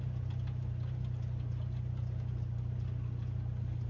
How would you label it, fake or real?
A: real